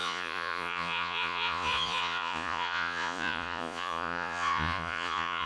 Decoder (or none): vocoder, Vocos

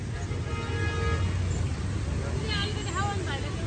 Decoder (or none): none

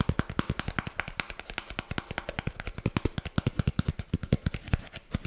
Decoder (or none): none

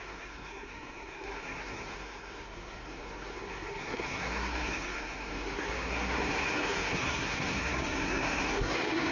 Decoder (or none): codec, SNAC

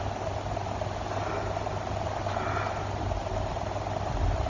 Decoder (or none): none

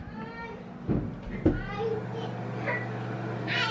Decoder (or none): none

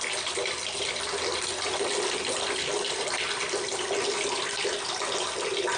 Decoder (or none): none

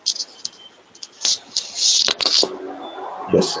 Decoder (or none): none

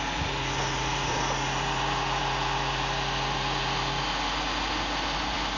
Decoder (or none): none